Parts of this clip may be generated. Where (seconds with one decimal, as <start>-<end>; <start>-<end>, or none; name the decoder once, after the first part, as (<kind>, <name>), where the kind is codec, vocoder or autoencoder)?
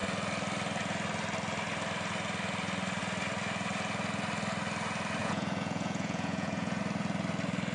5.2-6.8 (vocoder, Vocos)